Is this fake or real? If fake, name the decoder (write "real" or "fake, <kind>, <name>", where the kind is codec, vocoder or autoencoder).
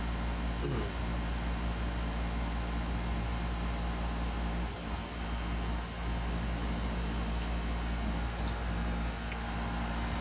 real